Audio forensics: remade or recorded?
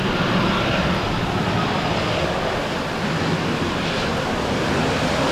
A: recorded